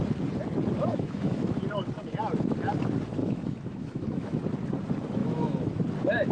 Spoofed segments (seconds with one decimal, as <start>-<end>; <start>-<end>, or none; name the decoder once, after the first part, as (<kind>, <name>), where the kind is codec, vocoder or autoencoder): 0.9-1.5 (autoencoder, DAC-VAE); 3.2-4.4; 5.2-5.8